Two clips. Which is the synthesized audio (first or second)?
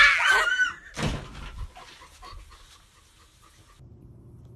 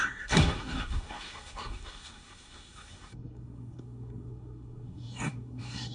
second